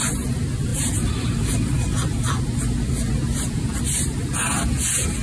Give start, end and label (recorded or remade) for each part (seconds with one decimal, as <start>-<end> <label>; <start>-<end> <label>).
0.0-0.7 recorded; 0.7-2.4 remade; 2.4-3.3 recorded; 3.3-3.8 remade; 3.8-5.2 recorded